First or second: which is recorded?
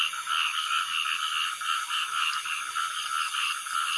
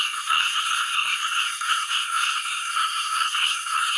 first